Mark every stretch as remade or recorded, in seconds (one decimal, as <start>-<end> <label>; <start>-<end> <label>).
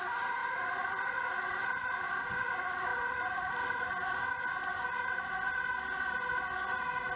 0.0-0.4 recorded; 0.4-2.2 remade; 2.2-2.9 recorded; 2.9-3.5 remade; 3.5-7.2 recorded